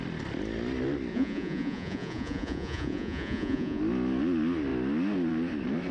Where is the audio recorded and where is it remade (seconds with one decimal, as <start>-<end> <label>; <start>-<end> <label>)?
0.0-1.1 recorded; 1.1-3.8 remade; 3.8-5.9 recorded